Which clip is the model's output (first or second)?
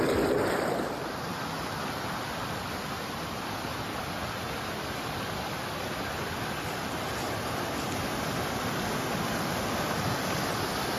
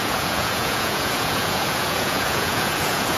second